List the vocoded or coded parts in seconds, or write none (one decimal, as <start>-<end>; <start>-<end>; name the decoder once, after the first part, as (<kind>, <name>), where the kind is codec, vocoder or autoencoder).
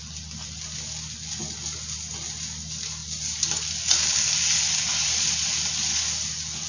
none